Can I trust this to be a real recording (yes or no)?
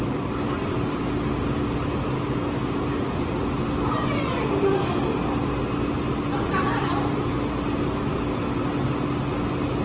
yes